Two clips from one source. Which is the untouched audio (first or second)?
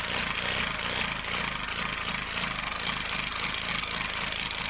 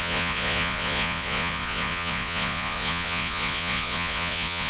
first